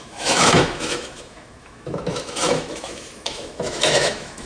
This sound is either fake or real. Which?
fake